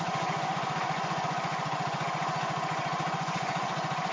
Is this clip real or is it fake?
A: fake